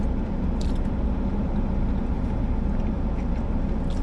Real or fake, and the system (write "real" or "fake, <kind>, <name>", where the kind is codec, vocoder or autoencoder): real